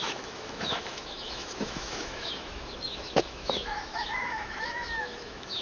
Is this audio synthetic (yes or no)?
yes